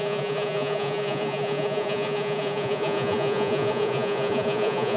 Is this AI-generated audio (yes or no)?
yes